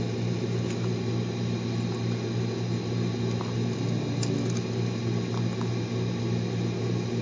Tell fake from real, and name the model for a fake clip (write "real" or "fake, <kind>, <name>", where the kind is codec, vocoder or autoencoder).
real